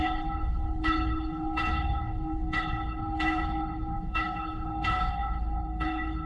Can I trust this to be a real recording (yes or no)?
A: no